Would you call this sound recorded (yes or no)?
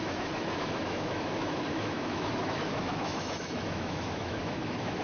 no